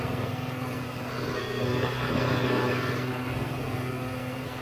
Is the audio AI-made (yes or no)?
yes